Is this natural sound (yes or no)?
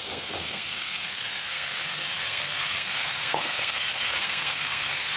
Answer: no